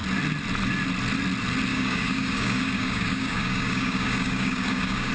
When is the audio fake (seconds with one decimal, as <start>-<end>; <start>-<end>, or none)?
1.7-5.1